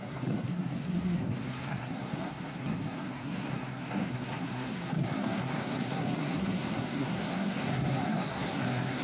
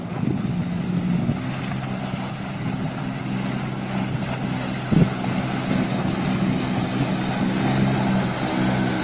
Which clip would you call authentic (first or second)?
second